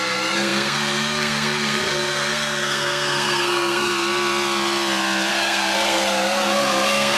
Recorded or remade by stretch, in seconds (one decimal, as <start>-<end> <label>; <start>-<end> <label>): 0.0-3.9 remade; 3.9-5.3 recorded; 5.3-7.2 remade